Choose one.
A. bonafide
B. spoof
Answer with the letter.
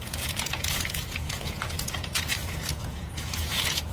B